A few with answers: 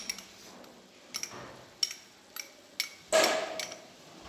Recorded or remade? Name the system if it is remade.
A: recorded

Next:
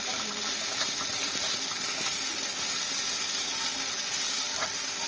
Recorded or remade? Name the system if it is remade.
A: remade, vocoder, BigVGAN v2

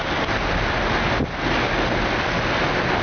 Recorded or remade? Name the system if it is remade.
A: recorded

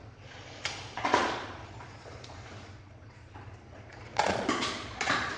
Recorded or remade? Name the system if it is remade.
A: remade, vocoder, Vocos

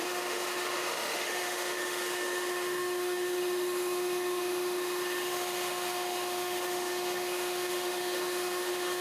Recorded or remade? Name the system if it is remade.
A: remade, autoencoder, DAC-VAE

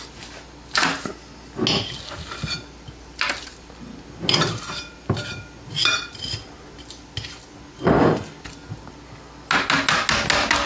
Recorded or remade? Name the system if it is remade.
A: recorded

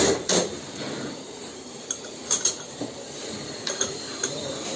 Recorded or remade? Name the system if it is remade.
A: remade, vocoder, BigVGAN v2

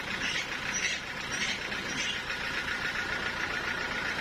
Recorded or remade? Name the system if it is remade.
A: recorded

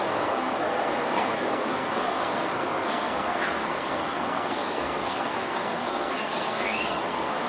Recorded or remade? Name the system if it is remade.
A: remade, codec, SNAC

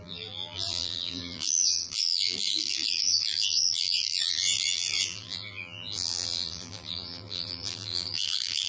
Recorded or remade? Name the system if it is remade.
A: remade, vocoder, BigVGAN v2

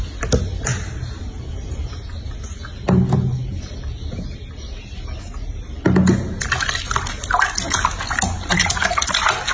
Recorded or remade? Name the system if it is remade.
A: recorded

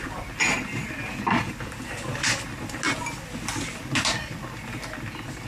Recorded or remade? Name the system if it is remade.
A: recorded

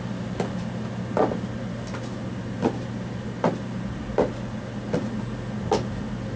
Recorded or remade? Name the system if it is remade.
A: recorded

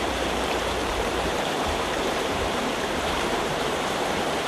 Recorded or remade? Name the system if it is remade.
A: remade, vocoder, BigVGAN v2